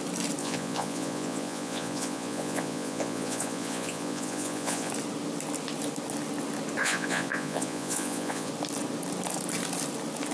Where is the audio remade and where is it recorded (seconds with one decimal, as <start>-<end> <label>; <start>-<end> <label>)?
0.0-0.4 recorded; 0.4-4.9 remade; 4.9-6.8 recorded; 6.8-8.5 remade; 8.5-10.3 recorded